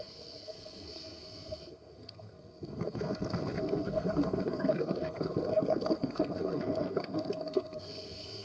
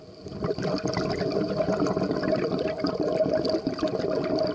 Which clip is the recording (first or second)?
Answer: second